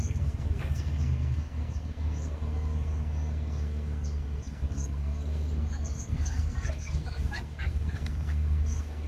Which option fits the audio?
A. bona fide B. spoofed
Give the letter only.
B